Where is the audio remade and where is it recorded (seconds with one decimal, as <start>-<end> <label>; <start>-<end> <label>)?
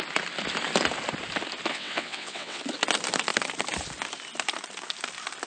0.0-1.7 recorded; 1.7-2.6 remade; 2.6-5.5 recorded